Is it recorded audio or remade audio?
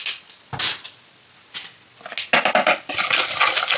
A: recorded